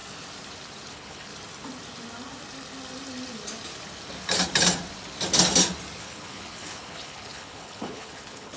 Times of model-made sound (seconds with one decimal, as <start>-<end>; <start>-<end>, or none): 0.9-1.3; 6.0-8.6